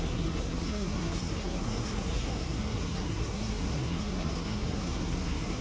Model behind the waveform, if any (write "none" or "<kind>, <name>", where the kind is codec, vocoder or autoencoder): codec, SNAC